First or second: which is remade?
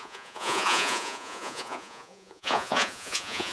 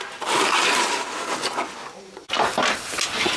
first